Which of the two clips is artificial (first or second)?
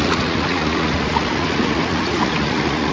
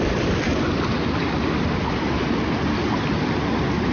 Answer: first